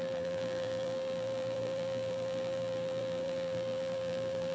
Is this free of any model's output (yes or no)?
no